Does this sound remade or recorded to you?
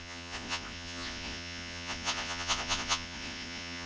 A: remade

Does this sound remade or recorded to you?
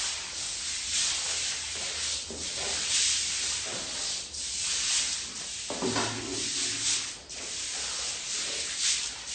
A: recorded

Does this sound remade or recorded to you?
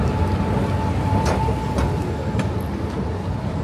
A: recorded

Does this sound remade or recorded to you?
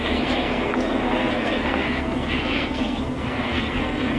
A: remade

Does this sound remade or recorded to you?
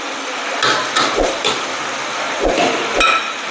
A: recorded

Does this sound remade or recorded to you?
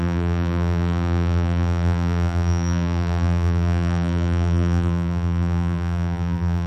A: remade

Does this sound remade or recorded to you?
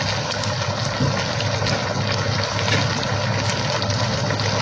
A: recorded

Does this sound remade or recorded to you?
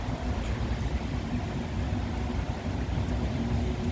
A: recorded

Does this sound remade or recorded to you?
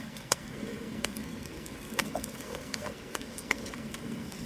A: remade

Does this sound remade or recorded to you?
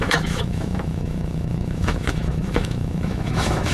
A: remade